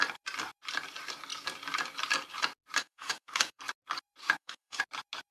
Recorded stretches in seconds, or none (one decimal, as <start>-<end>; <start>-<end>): 0.0-2.8; 3.6-4.2; 4.8-5.3